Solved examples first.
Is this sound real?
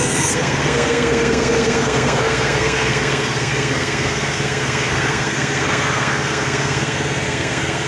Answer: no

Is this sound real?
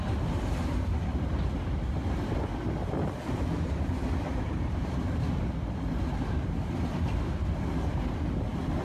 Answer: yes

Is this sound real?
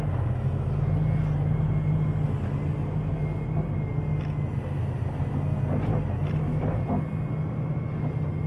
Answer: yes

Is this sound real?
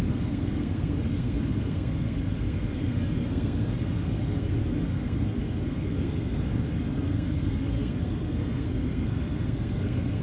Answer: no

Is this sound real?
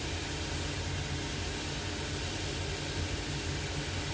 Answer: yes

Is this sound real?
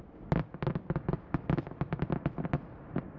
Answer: yes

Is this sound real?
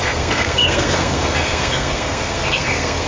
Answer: no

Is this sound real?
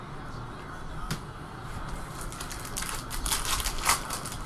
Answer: yes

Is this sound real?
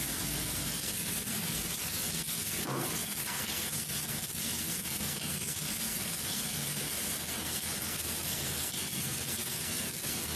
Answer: no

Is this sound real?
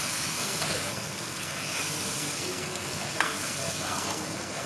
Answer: no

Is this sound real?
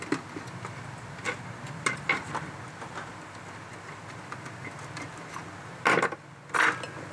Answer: yes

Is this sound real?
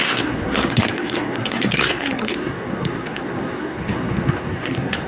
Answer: no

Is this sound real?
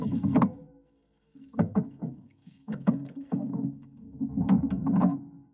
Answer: no